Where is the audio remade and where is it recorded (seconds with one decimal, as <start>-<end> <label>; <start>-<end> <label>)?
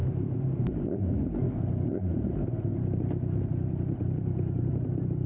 0.0-1.4 remade; 1.4-1.9 recorded; 1.9-5.3 remade